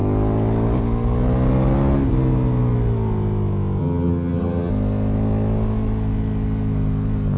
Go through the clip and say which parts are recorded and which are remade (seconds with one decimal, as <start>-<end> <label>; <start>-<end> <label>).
0.0-3.8 recorded; 3.8-4.7 remade; 4.7-7.4 recorded